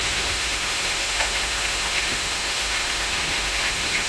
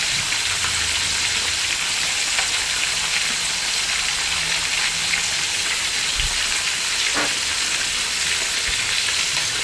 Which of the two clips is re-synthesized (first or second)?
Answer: first